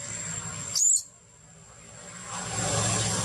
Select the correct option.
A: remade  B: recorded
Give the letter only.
B